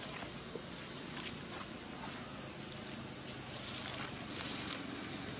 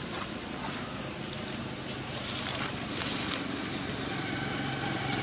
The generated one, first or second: second